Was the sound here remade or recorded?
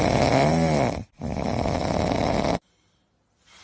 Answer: recorded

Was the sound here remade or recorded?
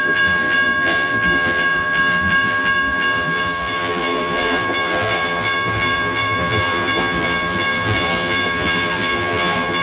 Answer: remade